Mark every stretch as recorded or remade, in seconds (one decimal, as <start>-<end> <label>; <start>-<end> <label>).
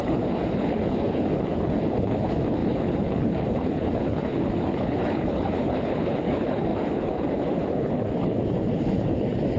0.0-9.6 remade